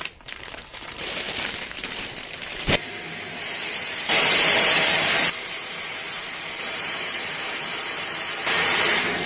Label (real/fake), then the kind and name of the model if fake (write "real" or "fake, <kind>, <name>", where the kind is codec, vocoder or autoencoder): fake, vocoder, BigVGAN v2